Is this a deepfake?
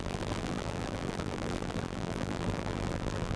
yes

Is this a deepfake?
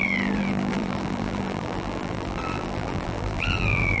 yes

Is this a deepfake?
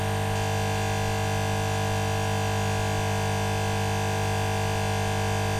no